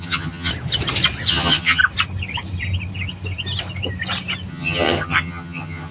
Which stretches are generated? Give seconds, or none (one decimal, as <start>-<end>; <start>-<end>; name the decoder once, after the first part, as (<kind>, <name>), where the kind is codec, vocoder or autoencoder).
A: 0.0-0.5 (vocoder, HiFi-GAN); 1.3-1.8; 4.5-5.9